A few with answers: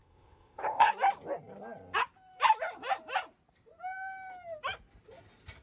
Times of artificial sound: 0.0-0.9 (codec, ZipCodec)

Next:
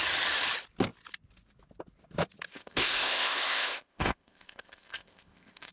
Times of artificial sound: 2.5-5.7 (codec, ZipCodec)

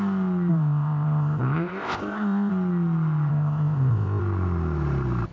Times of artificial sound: 0.5-2.5 (codec, ZipCodec); 3.3-4.2

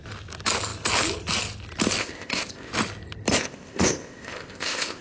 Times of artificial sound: 2.0-2.7 (codec, ZipCodec); 3.3-5.0

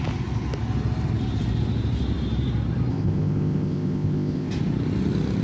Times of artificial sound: 2.9-4.5 (codec, ZipCodec)

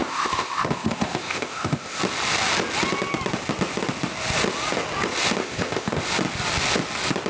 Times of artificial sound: 0.0-2.0 (codec, ZipCodec); 5.4-6.0

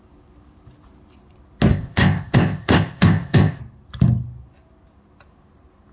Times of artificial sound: 1.7-3.6 (codec, ZipCodec)

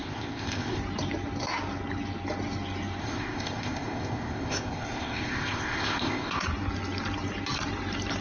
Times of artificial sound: 0.0-0.8 (codec, ZipCodec); 3.0-6.4